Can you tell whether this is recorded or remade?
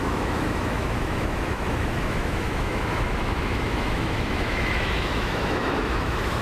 remade